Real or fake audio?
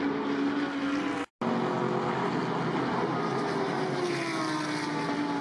real